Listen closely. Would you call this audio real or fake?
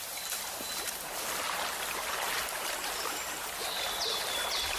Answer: real